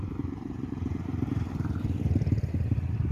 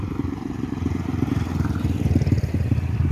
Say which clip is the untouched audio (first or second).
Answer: second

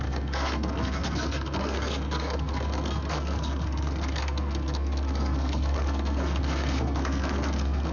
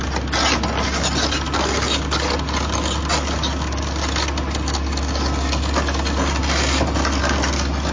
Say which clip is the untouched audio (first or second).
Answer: second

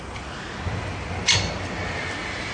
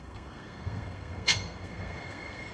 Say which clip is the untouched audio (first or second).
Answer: first